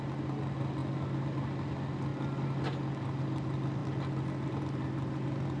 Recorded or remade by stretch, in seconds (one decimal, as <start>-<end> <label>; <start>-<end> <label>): 0.0-5.6 recorded